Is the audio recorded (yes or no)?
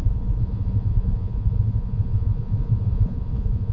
no